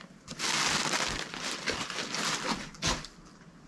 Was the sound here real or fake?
fake